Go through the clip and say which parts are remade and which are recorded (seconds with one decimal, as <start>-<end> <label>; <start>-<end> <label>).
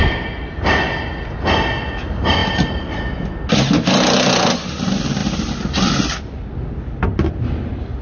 0.0-2.4 recorded; 2.4-3.0 remade; 3.0-5.2 recorded; 5.2-5.9 remade; 5.9-8.0 recorded